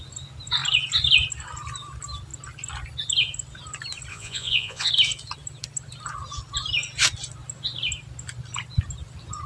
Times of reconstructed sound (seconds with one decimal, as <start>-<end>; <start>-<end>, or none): 4.1-4.9